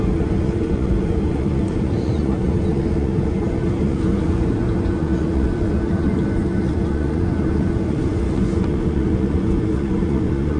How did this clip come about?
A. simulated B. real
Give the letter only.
A